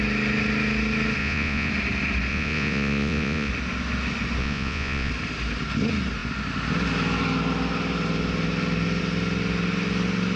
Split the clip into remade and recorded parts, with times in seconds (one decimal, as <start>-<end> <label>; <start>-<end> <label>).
0.0-1.2 recorded; 1.2-1.7 remade; 1.7-2.3 recorded; 2.3-3.5 remade; 3.5-4.4 recorded; 4.4-5.1 remade; 5.1-10.4 recorded